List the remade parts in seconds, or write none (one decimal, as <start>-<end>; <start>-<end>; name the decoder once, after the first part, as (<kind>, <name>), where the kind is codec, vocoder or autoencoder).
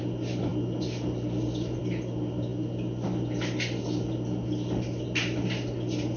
none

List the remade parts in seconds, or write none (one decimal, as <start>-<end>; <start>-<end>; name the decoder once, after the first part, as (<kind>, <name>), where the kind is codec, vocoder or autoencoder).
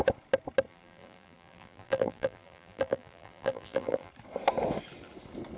0.7-4.1 (vocoder, BigVGAN v2)